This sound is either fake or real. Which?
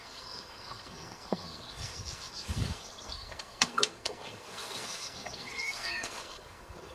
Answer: fake